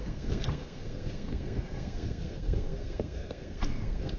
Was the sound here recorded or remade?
remade